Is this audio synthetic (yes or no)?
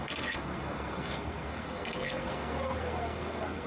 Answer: yes